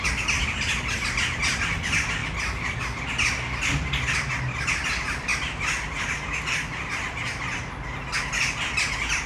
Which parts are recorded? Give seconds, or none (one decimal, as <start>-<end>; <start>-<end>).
0.0-9.3